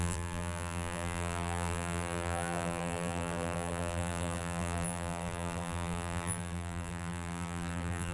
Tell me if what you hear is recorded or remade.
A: remade